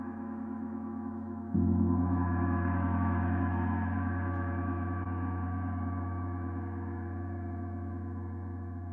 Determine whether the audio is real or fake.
fake